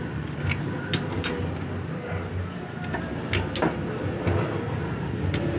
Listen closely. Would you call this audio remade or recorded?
recorded